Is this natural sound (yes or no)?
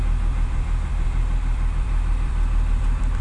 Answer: no